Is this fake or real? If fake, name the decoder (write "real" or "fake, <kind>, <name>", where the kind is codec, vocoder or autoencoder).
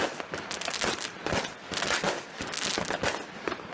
real